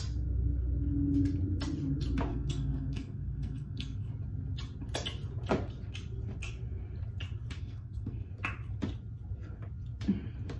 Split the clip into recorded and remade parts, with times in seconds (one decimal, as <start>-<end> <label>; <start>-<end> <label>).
0.0-2.3 recorded; 2.3-4.1 remade; 4.1-7.6 recorded; 7.6-8.3 remade; 8.3-10.6 recorded

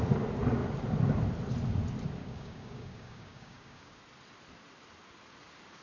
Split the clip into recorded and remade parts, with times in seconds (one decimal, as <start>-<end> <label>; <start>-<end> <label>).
0.0-2.2 recorded; 2.2-4.0 remade; 4.0-5.8 recorded

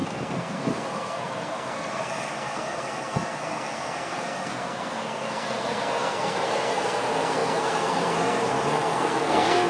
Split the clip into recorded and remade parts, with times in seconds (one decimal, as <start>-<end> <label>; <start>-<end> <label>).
0.0-9.7 remade

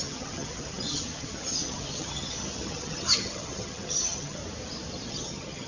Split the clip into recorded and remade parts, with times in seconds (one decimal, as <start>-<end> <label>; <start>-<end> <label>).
0.0-4.4 remade; 4.4-5.1 recorded; 5.1-5.7 remade